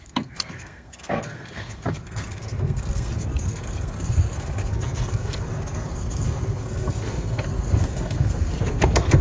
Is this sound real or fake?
fake